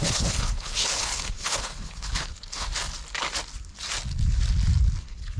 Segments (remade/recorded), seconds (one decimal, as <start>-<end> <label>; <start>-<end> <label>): 0.0-2.7 remade; 2.7-5.0 recorded; 5.0-5.4 remade